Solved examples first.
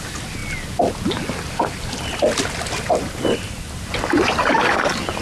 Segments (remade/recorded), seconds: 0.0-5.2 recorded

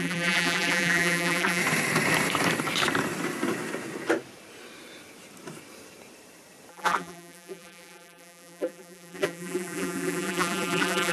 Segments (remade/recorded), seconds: 0.0-1.6 remade; 1.6-6.7 recorded; 6.7-11.1 remade

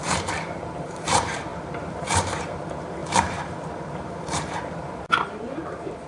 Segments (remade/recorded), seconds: 0.0-6.1 remade

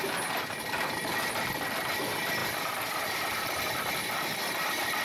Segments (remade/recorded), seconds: 0.0-2.4 recorded; 2.4-4.1 remade; 4.1-5.0 recorded

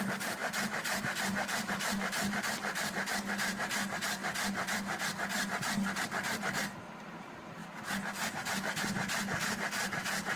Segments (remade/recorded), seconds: 0.0-4.2 remade; 4.2-6.9 recorded; 6.9-7.6 remade; 7.6-9.4 recorded; 9.4-10.4 remade

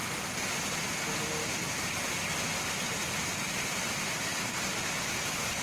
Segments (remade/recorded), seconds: 0.0-3.4 recorded; 3.4-5.6 remade

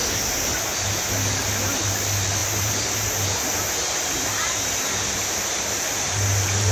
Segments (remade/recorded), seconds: 0.0-1.8 remade; 1.8-2.4 recorded; 2.4-6.7 remade

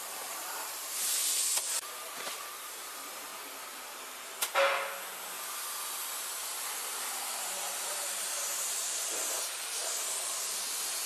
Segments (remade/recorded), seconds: 0.0-3.3 remade; 3.3-3.8 recorded; 3.8-4.5 remade; 4.5-6.9 recorded; 6.9-11.1 remade